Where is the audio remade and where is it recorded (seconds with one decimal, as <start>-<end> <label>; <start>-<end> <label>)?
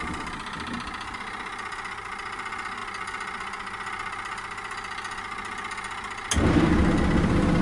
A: 0.0-7.6 recorded